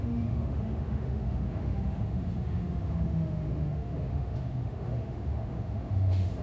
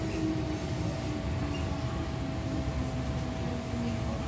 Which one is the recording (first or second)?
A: second